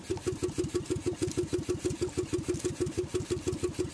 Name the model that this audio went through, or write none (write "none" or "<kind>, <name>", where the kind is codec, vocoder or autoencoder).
none